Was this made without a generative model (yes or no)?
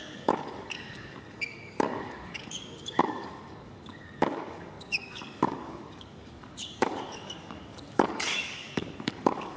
no